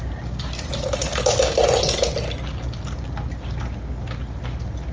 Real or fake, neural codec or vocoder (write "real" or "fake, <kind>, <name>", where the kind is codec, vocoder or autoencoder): real